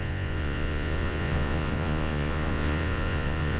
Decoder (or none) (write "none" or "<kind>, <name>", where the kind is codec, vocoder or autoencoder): vocoder, Vocos